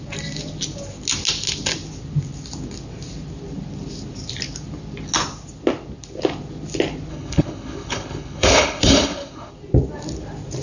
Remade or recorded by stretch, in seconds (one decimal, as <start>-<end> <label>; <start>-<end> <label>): 0.0-7.1 recorded; 7.1-9.5 remade; 9.5-10.6 recorded